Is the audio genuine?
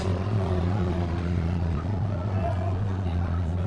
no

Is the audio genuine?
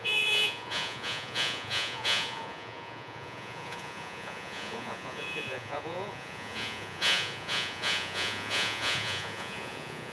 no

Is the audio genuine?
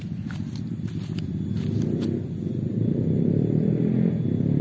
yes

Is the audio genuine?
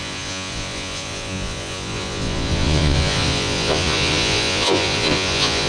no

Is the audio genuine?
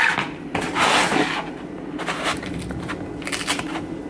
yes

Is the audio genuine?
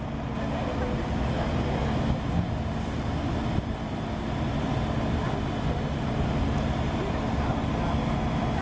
yes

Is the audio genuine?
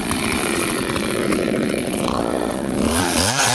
no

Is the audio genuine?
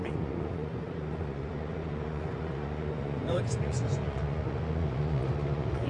no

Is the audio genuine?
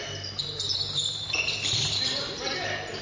yes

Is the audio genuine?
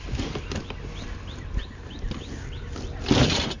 yes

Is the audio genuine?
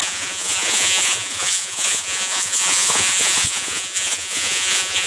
no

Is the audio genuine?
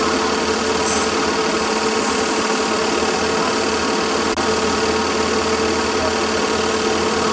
yes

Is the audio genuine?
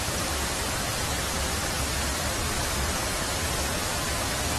yes